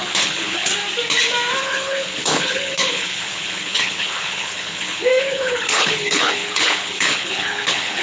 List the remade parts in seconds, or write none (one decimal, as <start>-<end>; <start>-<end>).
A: 0.0-0.7; 1.6-8.0

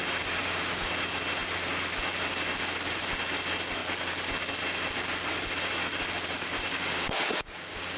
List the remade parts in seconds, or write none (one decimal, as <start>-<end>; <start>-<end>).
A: 0.4-0.9; 6.7-8.0

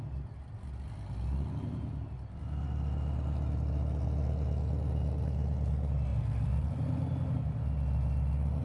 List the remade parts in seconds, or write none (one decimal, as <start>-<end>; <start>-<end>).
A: 6.1-6.7